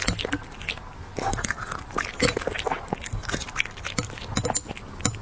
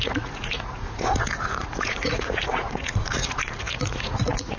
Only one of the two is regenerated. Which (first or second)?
second